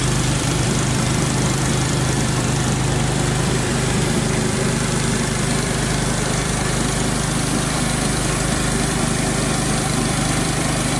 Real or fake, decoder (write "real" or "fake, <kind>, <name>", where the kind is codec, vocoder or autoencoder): fake, vocoder, BigVGAN v2